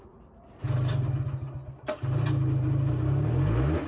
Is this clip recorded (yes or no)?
yes